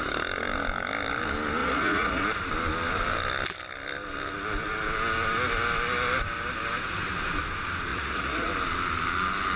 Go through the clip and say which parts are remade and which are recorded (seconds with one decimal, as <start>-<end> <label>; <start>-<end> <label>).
0.0-1.6 recorded; 1.6-2.2 remade; 2.2-7.9 recorded; 7.9-8.5 remade; 8.5-9.6 recorded

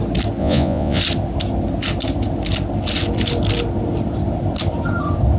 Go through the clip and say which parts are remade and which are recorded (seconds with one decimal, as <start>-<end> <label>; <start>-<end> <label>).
0.0-0.4 recorded; 0.4-1.0 remade; 1.0-5.4 recorded

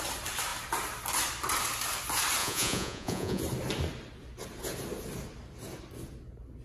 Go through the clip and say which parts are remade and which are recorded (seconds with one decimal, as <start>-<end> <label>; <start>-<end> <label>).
0.0-2.4 recorded; 2.4-3.4 remade; 3.4-6.6 recorded

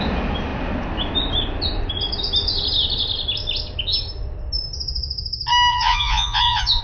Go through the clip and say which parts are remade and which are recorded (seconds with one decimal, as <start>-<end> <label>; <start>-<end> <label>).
0.0-5.7 recorded; 5.7-6.8 remade

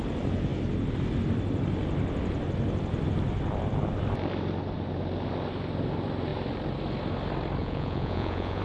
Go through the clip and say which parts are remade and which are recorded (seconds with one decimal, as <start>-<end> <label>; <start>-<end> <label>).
0.0-7.6 recorded; 7.6-8.6 remade

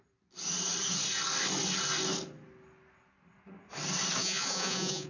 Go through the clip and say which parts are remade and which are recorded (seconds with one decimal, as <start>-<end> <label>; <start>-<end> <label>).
0.0-4.2 recorded; 4.2-5.1 remade

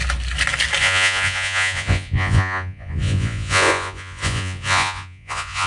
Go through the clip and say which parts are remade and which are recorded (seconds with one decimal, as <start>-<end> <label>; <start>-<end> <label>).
0.0-0.8 recorded; 0.8-5.7 remade